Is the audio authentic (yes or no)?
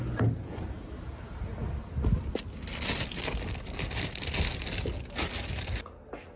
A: yes